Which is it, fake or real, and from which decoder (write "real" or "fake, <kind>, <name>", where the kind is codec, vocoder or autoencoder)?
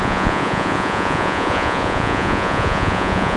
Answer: fake, vocoder, Vocos